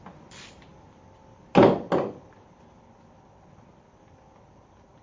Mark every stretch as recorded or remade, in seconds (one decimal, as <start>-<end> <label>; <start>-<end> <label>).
0.0-5.0 recorded